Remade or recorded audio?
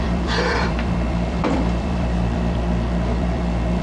remade